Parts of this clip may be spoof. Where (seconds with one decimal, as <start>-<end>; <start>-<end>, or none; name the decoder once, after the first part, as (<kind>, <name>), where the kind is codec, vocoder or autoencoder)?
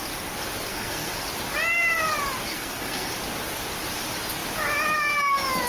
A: 0.7-1.2 (codec, SNAC); 2.5-3.1